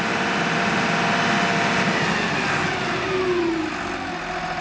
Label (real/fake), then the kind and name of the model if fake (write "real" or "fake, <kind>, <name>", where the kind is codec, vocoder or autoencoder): real